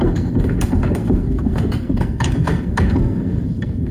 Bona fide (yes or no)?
no